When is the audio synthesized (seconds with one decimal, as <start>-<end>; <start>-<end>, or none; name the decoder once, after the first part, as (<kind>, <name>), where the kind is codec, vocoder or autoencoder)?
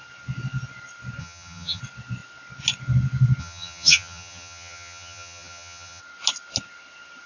1.2-1.8 (vocoder, HiFi-GAN); 3.4-6.0